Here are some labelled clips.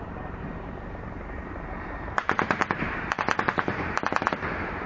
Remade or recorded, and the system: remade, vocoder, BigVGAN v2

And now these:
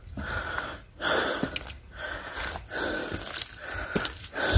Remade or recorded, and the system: recorded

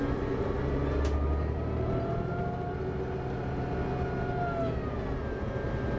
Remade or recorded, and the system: recorded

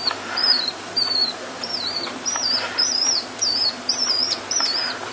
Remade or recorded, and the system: remade, vocoder, BigVGAN v2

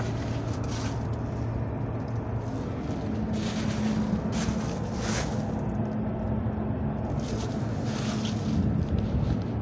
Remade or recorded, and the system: recorded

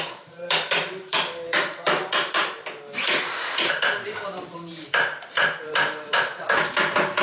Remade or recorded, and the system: remade, vocoder, BigVGAN v2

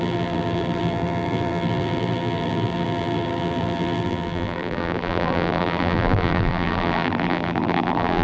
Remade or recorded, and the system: remade, vocoder, BigVGAN v2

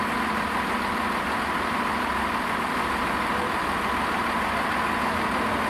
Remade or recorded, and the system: remade, vocoder, BigVGAN v2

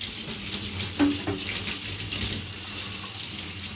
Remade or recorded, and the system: recorded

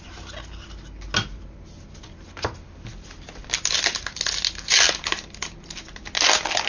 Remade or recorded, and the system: recorded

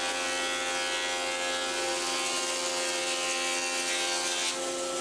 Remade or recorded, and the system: recorded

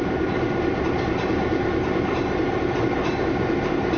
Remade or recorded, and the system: remade, vocoder, BigVGAN v2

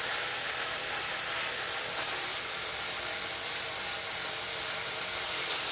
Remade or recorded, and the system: remade, vocoder, BigVGAN v2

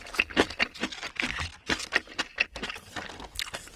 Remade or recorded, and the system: recorded